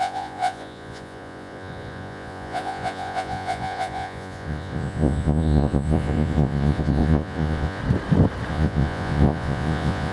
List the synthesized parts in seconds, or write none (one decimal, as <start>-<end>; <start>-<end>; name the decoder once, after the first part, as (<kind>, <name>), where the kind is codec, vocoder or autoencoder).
0.0-7.8 (vocoder, Vocos); 8.5-10.1